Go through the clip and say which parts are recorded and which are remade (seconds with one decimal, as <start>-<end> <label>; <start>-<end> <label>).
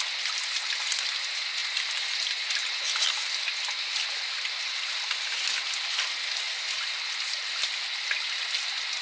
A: 0.0-9.0 recorded